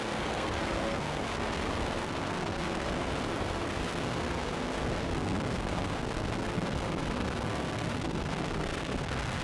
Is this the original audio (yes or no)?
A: no